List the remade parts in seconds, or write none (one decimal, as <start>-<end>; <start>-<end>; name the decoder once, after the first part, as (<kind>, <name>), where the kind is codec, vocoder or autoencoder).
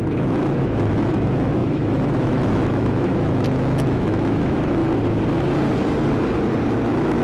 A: 0.0-4.8 (autoencoder, DAC-VAE); 6.7-7.2